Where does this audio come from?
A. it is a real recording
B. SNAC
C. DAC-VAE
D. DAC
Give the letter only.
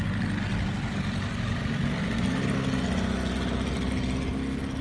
A